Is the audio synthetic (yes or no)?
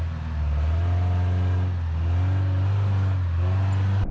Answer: no